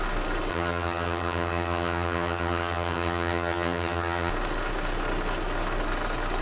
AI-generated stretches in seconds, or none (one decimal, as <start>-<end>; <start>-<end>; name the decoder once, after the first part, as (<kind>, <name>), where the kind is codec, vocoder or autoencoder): 0.5-4.3 (vocoder, HiFi-GAN)